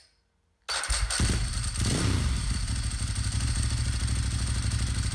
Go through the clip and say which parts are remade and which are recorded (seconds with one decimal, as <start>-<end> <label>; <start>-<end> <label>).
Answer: 0.0-5.1 recorded